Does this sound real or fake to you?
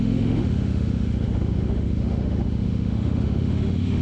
fake